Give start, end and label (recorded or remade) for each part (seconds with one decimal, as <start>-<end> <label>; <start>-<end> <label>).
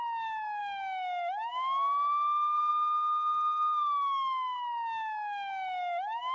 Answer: 0.0-6.3 remade